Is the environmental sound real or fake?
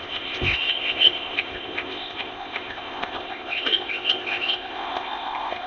fake